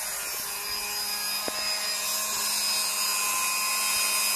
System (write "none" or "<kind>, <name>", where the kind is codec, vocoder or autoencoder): none